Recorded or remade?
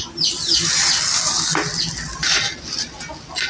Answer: recorded